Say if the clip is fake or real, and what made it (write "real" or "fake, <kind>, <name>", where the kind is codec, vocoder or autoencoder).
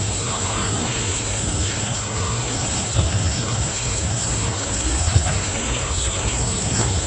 fake, codec, SNAC